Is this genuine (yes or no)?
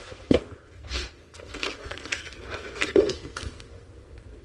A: no